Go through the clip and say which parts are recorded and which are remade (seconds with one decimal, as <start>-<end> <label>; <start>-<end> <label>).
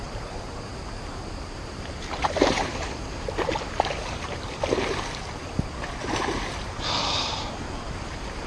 0.0-8.5 remade